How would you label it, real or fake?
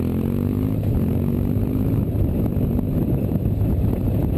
fake